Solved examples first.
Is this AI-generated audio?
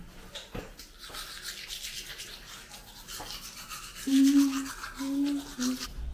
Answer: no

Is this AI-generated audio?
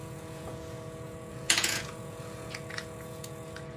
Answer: yes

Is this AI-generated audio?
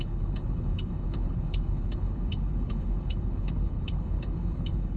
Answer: yes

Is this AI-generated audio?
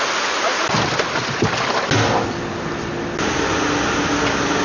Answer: no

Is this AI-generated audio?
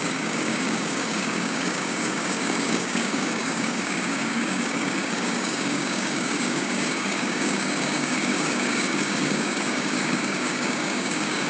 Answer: yes